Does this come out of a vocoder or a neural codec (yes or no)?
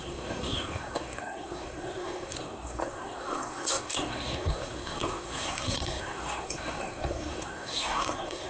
yes